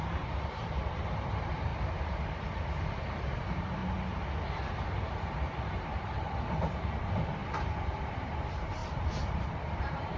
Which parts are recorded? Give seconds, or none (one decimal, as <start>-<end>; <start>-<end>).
3.8-5.0; 7.4-8.1